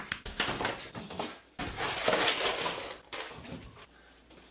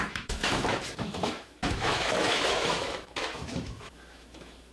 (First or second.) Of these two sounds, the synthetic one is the second